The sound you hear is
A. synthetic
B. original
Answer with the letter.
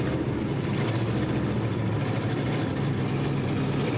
A